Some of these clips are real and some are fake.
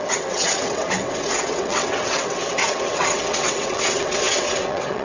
fake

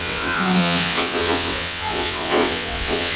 fake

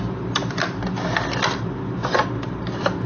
real